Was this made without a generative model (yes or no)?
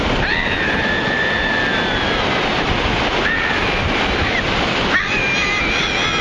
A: yes